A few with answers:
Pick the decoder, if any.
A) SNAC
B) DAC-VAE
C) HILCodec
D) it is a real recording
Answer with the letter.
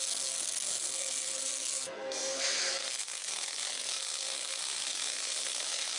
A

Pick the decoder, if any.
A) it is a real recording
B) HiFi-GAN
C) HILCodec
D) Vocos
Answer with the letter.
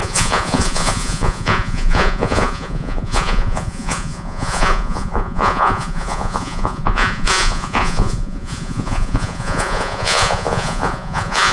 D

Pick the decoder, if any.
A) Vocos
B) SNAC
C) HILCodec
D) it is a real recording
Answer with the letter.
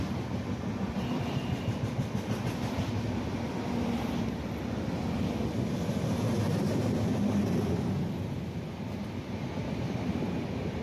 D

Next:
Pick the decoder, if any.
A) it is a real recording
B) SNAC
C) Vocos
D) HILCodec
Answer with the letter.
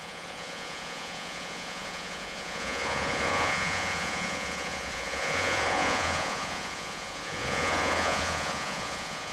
C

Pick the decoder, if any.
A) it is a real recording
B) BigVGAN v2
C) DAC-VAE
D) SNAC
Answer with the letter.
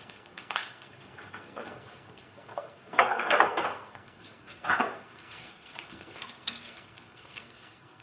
D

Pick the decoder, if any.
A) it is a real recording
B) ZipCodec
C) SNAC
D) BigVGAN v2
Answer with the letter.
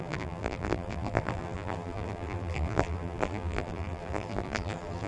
D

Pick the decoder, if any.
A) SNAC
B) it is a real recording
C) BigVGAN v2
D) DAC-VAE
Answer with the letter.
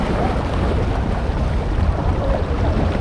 C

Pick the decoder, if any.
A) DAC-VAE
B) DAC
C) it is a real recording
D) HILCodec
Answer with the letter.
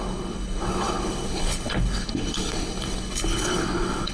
D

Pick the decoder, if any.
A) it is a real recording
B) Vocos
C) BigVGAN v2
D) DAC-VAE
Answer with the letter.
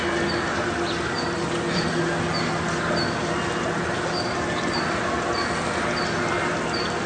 A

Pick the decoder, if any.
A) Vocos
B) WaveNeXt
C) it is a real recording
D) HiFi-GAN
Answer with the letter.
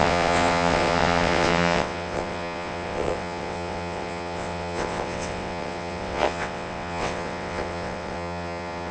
B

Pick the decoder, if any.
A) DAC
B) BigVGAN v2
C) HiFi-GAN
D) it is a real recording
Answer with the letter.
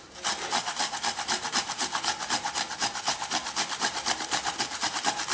D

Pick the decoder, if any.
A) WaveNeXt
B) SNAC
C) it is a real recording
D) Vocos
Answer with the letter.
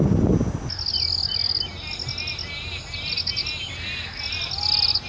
C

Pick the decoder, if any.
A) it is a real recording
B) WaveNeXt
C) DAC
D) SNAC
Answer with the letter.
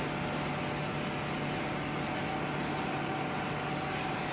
A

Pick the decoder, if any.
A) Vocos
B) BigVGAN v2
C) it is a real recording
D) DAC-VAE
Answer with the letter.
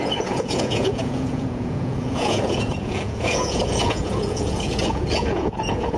A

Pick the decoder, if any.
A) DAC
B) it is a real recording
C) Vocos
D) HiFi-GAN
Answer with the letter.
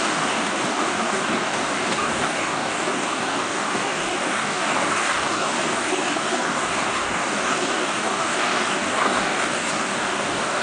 A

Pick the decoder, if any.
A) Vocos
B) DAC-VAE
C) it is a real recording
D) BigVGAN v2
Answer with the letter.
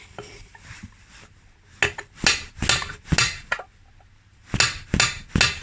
C